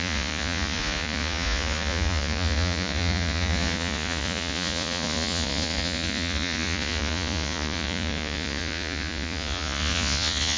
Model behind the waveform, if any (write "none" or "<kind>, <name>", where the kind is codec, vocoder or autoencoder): vocoder, Vocos